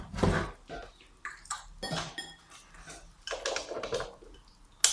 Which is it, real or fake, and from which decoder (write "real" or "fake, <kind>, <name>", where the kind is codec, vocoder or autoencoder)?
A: real